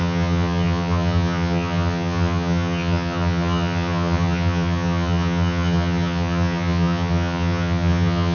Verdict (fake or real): fake